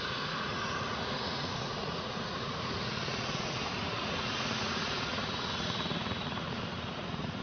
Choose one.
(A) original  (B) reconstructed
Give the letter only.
B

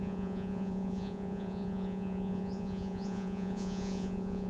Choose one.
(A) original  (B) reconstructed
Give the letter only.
B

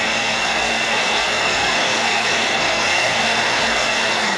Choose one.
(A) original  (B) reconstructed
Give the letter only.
B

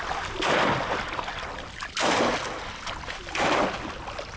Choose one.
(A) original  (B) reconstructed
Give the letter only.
A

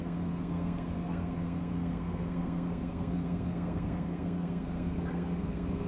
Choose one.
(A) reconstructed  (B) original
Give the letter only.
A